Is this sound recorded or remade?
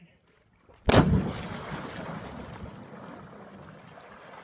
recorded